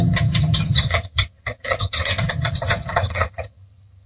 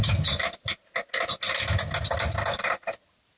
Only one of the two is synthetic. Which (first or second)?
first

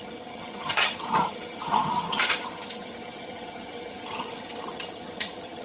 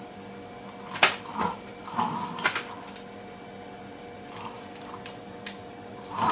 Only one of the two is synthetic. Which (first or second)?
first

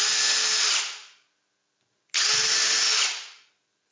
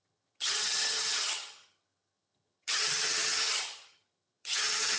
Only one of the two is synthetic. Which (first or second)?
second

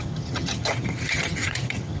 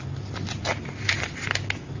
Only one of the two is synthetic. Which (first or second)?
first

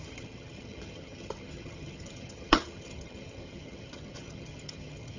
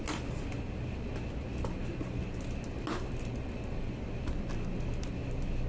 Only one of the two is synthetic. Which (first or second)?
first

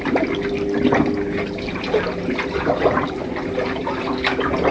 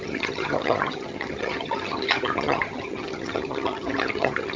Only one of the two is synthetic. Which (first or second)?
second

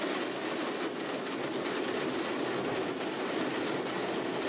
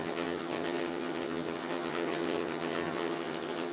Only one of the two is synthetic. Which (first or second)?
second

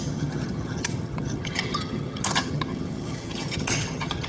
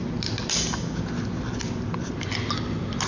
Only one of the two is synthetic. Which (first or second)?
first